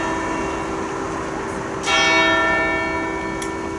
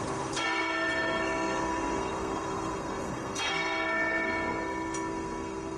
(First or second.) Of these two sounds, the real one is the first